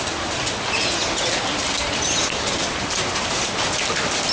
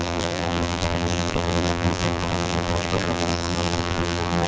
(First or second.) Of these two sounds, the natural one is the first